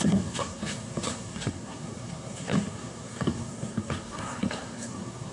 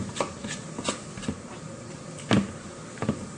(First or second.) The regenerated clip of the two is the first